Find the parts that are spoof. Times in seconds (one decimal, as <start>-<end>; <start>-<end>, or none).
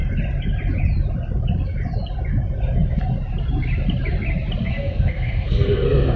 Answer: 4.6-6.2